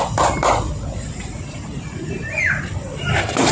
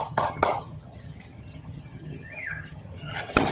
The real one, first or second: first